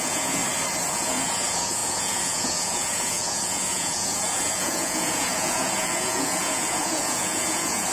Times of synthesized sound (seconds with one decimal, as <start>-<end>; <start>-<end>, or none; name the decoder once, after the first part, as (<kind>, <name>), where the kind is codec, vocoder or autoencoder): 0.0-0.4 (vocoder, Vocos); 0.9-7.9